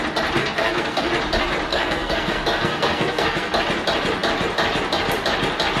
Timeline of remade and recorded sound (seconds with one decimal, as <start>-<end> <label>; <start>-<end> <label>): 0.0-0.4 recorded; 0.4-1.1 remade; 1.1-1.7 recorded; 1.7-3.6 remade; 3.6-5.8 recorded